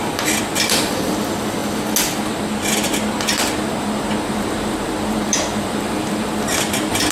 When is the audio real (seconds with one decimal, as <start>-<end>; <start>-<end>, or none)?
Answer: 1.6-4.3